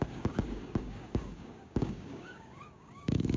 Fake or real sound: fake